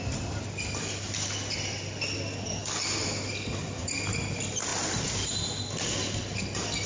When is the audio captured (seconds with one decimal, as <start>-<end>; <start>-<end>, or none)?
0.0-4.7; 5.3-6.9